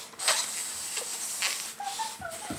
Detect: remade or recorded recorded